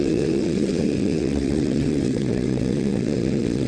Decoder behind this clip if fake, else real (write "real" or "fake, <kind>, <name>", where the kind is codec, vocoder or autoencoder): fake, vocoder, WaveNeXt